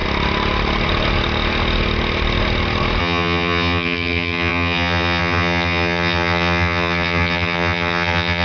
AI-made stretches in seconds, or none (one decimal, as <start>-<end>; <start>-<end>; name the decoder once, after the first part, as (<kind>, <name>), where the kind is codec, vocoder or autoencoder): 3.0-8.4 (vocoder, HiFi-GAN)